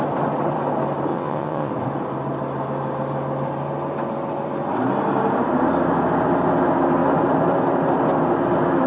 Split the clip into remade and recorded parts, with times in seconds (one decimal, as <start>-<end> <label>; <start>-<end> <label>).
0.0-1.1 recorded; 1.1-1.7 remade; 1.7-8.9 recorded